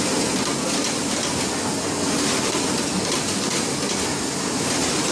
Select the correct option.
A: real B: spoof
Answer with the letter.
A